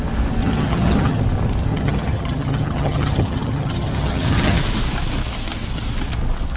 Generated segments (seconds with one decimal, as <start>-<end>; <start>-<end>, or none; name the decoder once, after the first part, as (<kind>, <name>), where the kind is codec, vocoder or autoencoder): 0.4-1.2 (vocoder, HiFi-GAN); 1.7-4.6